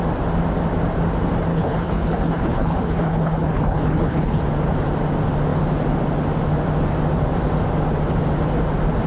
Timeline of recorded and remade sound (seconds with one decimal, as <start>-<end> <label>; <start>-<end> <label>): 0.0-1.5 recorded; 1.5-4.4 remade; 4.4-9.1 recorded